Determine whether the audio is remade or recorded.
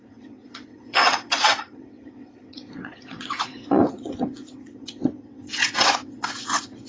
remade